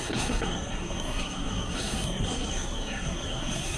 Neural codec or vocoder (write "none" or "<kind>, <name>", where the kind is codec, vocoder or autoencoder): codec, SNAC